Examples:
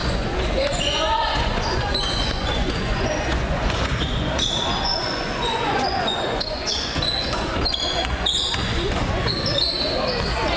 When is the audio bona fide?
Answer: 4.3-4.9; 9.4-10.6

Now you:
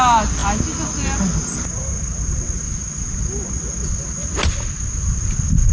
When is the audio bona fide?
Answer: 0.0-5.7

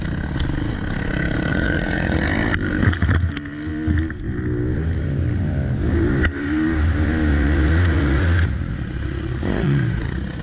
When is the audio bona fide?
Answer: 0.0-1.5; 2.2-2.8; 3.3-7.3

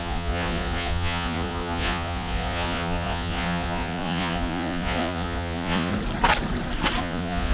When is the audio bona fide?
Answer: 5.9-7.0

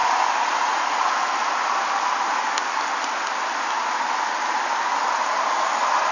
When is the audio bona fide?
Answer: 1.1-6.1